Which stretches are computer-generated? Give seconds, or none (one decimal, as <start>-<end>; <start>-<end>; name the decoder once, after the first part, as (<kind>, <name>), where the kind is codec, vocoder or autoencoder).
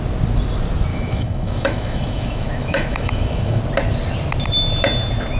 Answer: 0.9-3.6 (autoencoder, DAC-VAE)